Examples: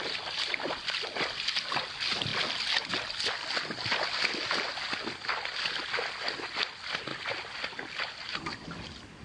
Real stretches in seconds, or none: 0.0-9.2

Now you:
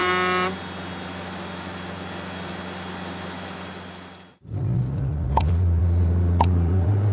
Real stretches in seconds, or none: 0.0-4.3

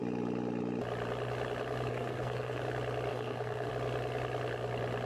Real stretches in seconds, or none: 0.0-1.9; 2.6-3.1; 3.7-5.1